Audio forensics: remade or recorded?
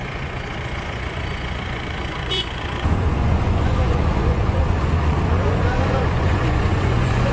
remade